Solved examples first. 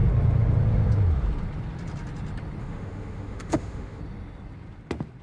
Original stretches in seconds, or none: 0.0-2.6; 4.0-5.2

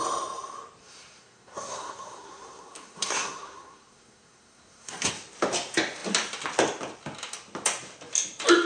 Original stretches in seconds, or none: 0.0-0.8; 5.1-8.7

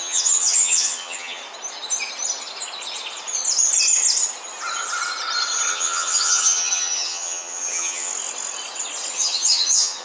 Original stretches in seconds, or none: 1.4-5.7; 8.1-9.1

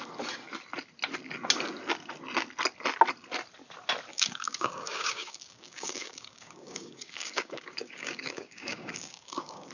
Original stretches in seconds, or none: 0.0-4.1

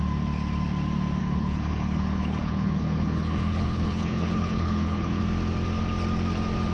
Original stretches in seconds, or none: 0.0-1.2; 5.2-6.7